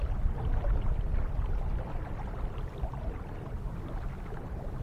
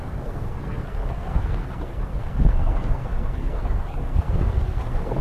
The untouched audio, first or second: first